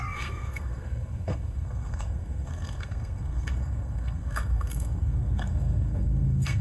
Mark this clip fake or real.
fake